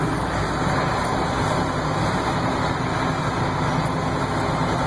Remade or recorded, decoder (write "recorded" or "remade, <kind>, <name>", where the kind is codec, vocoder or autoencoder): recorded